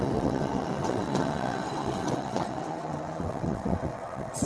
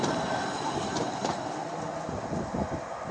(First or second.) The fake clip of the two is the first